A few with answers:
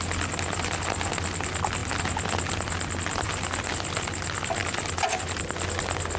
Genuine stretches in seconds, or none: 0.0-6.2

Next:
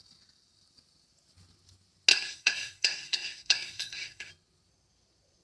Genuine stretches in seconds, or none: 0.0-2.1; 4.3-5.4